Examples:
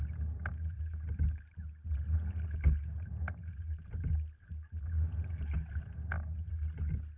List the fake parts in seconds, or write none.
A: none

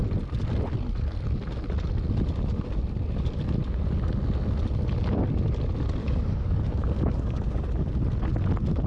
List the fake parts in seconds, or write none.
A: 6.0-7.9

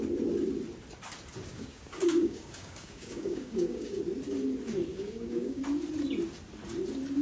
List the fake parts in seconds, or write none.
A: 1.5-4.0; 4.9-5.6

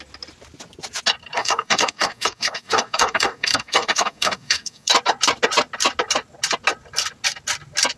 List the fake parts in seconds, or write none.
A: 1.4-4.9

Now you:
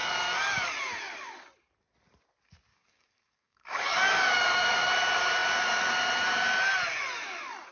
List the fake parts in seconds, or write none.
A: 0.0-0.7; 2.7-4.9

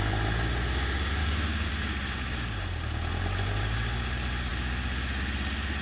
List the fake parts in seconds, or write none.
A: 1.2-1.7

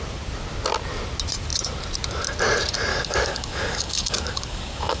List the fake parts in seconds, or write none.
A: 2.9-5.0